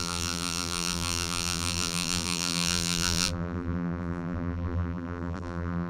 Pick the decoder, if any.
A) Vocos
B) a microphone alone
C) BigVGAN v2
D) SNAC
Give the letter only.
C